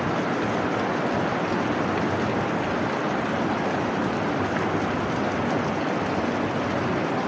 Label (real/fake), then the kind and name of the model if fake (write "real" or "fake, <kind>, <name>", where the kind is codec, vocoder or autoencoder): real